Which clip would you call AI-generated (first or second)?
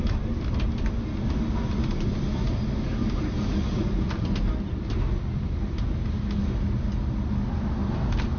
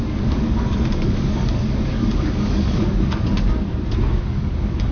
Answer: second